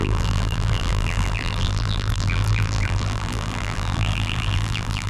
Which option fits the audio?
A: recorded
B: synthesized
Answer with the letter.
B